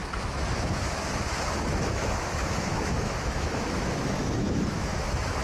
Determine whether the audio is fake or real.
fake